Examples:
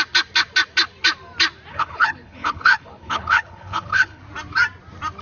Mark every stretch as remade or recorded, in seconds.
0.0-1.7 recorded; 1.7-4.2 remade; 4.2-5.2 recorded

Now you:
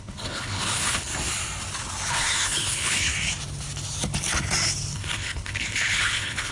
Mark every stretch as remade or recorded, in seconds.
0.0-1.1 remade; 1.1-2.1 recorded; 2.1-3.1 remade; 3.1-4.9 recorded; 4.9-6.5 remade

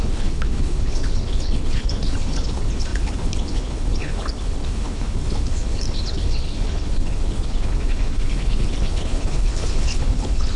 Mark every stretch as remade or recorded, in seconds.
0.0-10.6 remade

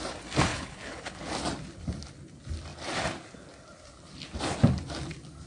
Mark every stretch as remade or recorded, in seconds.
0.0-0.5 recorded; 0.5-1.2 remade; 1.2-5.5 recorded

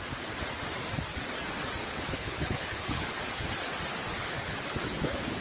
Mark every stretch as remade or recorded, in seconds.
0.0-1.8 recorded; 1.8-3.2 remade; 3.2-4.2 recorded; 4.2-5.4 remade

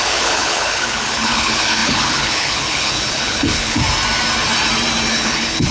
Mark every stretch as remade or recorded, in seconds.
0.0-3.8 remade; 3.8-5.1 recorded; 5.1-5.7 remade